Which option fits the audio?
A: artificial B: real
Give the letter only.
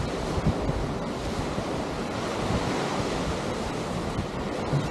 B